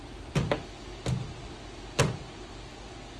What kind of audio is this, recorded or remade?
recorded